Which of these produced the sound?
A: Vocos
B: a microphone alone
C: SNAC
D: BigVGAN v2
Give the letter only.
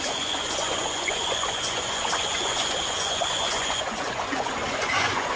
A